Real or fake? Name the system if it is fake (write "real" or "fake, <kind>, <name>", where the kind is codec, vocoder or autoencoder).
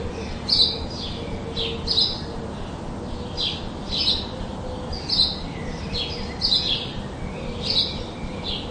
real